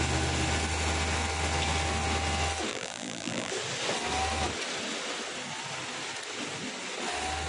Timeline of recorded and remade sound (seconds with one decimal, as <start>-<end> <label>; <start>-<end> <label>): 0.0-2.7 recorded; 2.7-3.5 remade; 3.5-7.5 recorded